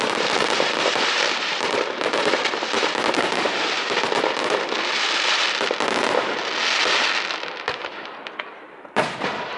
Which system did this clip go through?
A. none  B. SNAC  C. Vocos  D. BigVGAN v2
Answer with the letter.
D